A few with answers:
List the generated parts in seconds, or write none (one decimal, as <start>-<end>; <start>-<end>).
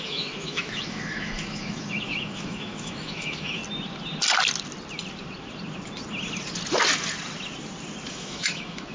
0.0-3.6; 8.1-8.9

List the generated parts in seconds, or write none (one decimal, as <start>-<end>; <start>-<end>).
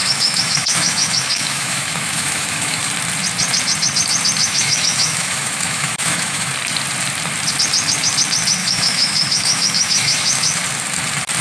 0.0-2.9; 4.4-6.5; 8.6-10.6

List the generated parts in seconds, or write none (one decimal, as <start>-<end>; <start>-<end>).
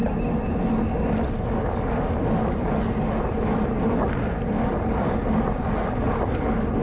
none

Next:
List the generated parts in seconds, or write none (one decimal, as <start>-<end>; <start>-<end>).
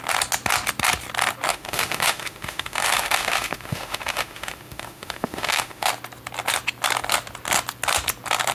1.5-5.9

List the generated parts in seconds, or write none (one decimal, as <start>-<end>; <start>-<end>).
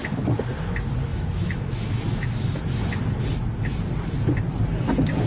1.1-2.6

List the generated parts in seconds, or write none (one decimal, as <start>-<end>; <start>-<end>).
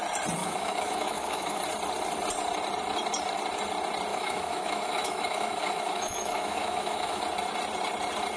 0.4-1.6; 4.1-7.2